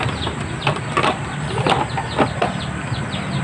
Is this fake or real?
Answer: real